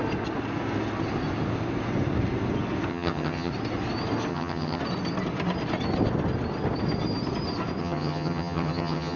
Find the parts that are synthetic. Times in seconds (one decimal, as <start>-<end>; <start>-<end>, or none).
2.9-3.5; 4.3-4.8; 7.8-9.2